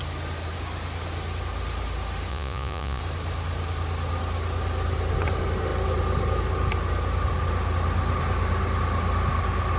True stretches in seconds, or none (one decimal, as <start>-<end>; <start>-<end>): 0.0-2.3; 3.0-9.8

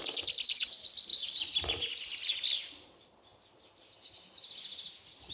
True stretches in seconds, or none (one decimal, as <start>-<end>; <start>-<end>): 0.0-1.1; 1.9-5.3

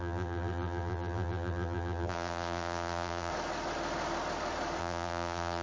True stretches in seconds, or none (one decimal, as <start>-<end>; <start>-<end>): 3.3-4.8